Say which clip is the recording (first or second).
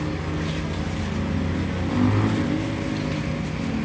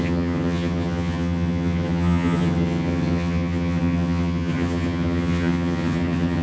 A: first